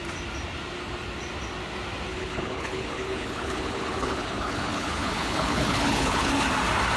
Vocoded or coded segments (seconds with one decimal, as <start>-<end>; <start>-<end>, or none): 2.1-6.3